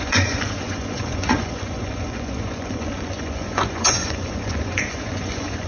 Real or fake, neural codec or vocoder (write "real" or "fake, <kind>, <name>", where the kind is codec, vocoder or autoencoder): fake, vocoder, Vocos